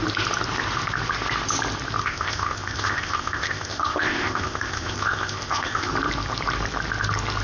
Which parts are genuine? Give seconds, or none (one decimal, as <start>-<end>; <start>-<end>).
0.0-2.0; 5.9-7.4